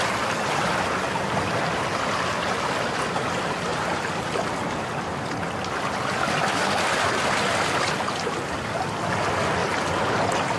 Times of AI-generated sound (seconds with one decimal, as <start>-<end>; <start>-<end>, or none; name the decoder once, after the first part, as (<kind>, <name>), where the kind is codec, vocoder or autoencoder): none